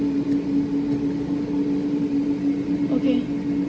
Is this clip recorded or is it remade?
recorded